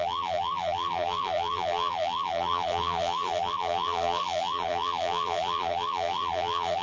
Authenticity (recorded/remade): remade